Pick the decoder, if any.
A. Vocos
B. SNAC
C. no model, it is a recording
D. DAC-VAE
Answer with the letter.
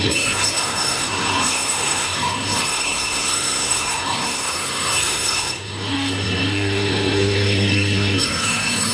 B